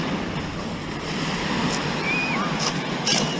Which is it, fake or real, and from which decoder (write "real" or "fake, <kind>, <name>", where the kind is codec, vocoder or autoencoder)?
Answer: real